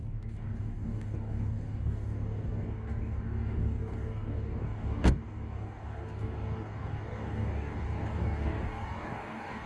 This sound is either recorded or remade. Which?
remade